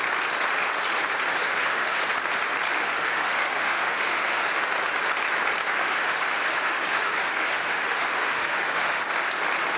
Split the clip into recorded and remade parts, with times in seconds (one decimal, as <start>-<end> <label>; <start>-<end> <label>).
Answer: 0.0-1.3 recorded; 1.3-2.0 remade; 2.0-2.8 recorded; 2.8-4.5 remade; 4.5-5.8 recorded; 5.8-9.1 remade; 9.1-9.8 recorded